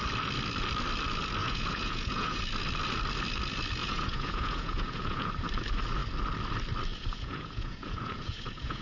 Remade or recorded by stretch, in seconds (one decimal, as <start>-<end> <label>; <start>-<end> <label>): 0.0-1.4 recorded; 1.4-2.4 remade; 2.4-3.8 recorded; 3.8-5.3 remade; 5.3-6.9 recorded; 6.9-8.8 remade